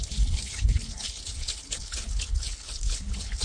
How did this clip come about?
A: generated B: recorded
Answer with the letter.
A